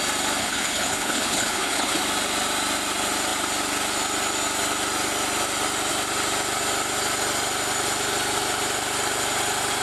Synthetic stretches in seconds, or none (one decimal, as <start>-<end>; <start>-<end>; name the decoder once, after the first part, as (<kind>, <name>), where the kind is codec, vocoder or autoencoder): 0.4-2.0 (codec, HILCodec)